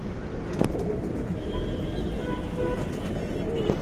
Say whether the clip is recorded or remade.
recorded